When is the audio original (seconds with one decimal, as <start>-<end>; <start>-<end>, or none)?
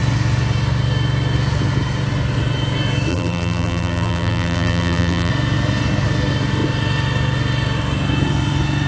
0.0-3.1; 5.3-8.9